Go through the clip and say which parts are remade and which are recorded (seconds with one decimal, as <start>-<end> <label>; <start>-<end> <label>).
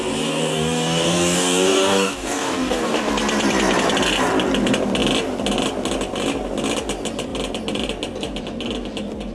0.0-0.5 recorded; 0.5-3.1 remade; 3.1-9.3 recorded